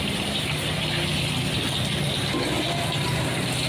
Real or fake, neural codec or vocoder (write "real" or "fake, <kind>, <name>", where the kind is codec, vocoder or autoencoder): real